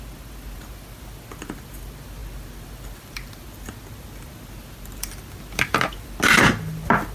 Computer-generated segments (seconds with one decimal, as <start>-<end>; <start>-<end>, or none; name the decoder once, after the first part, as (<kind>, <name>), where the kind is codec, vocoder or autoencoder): none